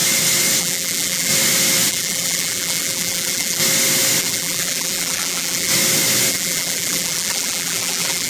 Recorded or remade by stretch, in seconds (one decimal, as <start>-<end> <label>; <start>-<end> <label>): 0.0-0.6 recorded; 0.6-1.3 remade; 1.3-1.9 recorded; 1.9-3.6 remade; 3.6-4.2 recorded; 4.2-5.7 remade; 5.7-6.3 recorded; 6.3-8.3 remade